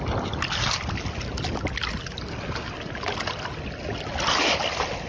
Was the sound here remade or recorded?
recorded